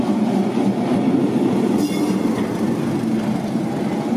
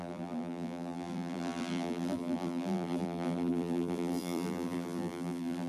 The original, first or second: first